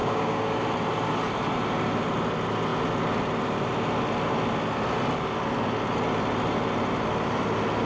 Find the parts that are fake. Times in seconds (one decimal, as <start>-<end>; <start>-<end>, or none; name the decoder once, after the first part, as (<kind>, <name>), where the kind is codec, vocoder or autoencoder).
0.0-0.6 (codec, DAC)